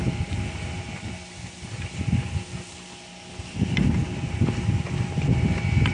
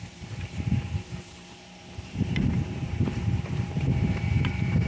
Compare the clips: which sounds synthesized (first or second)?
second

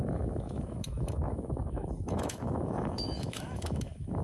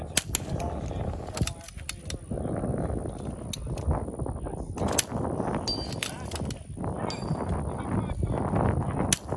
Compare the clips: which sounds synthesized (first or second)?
first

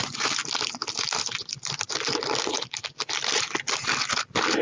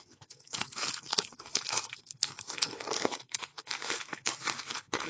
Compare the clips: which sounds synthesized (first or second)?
second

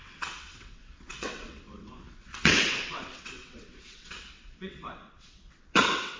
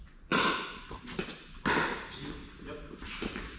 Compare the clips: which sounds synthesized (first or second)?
first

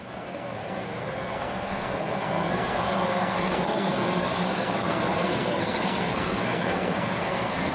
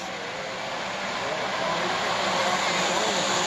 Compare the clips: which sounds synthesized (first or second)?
first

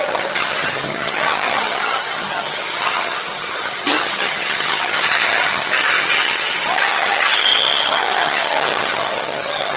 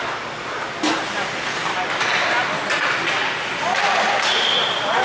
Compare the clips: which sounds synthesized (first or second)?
first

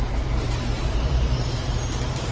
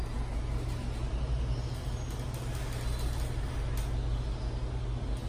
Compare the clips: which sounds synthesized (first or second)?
first